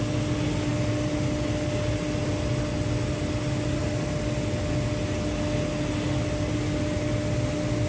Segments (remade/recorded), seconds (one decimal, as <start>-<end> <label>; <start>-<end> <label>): 0.0-7.9 recorded